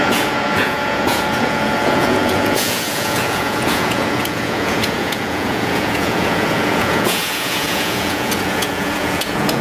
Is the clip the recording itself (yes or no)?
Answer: no